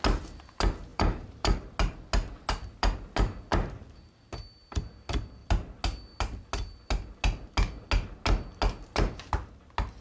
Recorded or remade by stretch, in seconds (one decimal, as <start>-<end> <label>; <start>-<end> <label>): 0.0-0.9 recorded; 0.9-1.7 remade; 1.7-3.5 recorded; 3.5-4.2 remade; 4.2-10.0 recorded